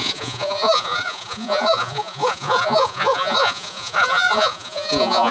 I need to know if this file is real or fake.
fake